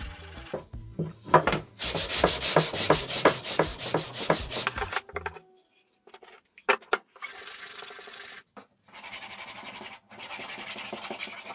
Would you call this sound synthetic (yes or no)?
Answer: no